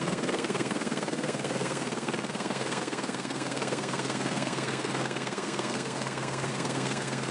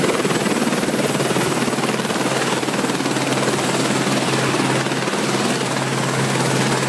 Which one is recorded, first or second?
second